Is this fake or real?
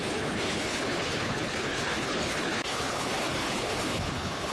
fake